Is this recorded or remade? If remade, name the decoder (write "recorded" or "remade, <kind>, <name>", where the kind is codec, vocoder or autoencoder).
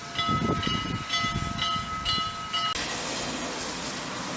recorded